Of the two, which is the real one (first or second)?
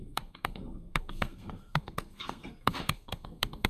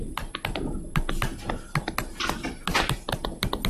second